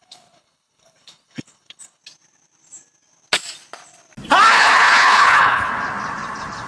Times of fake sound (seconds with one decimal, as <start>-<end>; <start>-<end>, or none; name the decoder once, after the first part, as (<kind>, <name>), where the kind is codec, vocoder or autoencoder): 0.0-2.0 (codec, HILCodec); 4.5-5.7